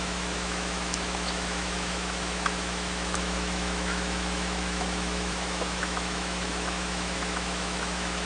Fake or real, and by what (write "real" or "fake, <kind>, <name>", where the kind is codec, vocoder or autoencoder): fake, autoencoder, DAC-VAE